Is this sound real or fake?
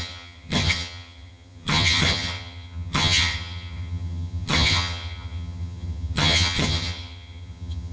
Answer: fake